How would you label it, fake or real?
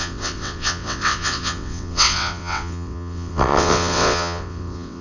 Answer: fake